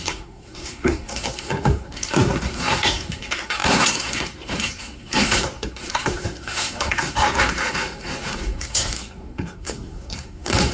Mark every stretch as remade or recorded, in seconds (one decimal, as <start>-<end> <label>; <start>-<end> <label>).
0.0-10.7 remade